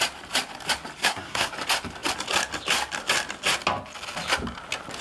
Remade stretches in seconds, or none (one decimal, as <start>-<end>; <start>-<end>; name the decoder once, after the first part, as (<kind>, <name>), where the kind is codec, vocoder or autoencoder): 1.0-1.5 (codec, SNAC)

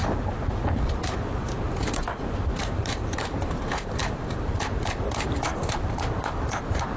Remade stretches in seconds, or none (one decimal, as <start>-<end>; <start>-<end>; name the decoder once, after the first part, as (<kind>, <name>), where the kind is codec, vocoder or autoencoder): 0.5-7.0 (vocoder, BigVGAN v2)